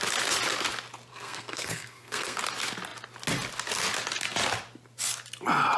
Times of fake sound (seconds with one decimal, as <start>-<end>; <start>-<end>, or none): 1.1-2.4